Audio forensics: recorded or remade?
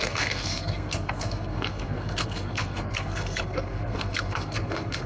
remade